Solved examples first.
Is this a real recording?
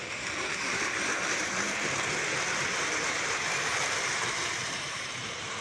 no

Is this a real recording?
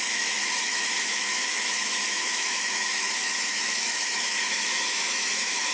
no